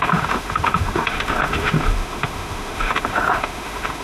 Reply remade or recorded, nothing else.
remade